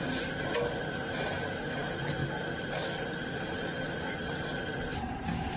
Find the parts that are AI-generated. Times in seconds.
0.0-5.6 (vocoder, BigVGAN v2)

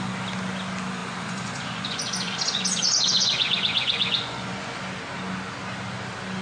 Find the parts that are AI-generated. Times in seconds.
1.0-4.8 (vocoder, Vocos)

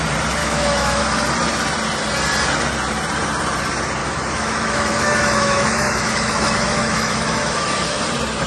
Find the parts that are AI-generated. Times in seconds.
0.4-1.0 (autoencoder, DAC-VAE); 4.0-8.0

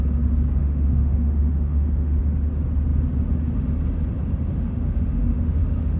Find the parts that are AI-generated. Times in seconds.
0.6-2.2 (autoencoder, DAC-VAE); 4.5-6.0